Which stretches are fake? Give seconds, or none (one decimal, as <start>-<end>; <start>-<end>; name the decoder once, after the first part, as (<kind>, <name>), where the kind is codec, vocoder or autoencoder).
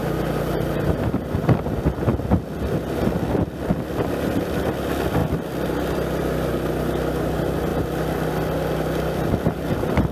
0.0-1.0 (vocoder, BigVGAN v2)